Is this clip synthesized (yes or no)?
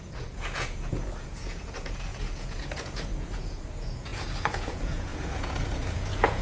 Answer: yes